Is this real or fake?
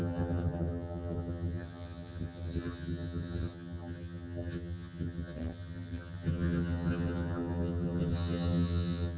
fake